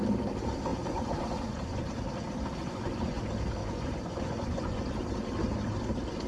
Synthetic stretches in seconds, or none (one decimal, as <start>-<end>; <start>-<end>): 0.7-1.9; 2.6-3.2; 3.6-4.9